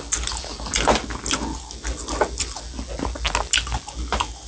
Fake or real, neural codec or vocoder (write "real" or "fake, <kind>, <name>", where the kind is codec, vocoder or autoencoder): real